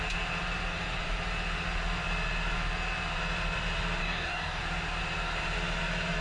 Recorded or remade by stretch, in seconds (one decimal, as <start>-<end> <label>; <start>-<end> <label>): 0.0-4.0 recorded; 4.0-4.6 remade; 4.6-6.2 recorded